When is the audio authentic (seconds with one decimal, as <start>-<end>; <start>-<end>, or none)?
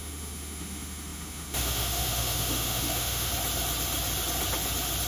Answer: 3.3-5.1